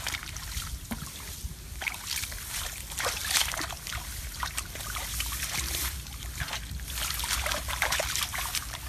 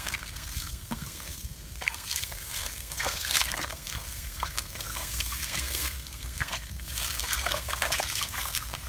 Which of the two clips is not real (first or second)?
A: second